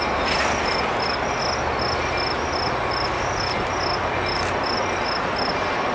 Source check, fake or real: real